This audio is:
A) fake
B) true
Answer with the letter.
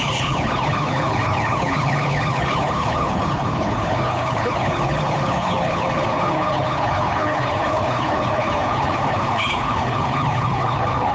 A